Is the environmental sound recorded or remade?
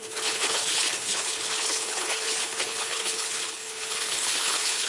remade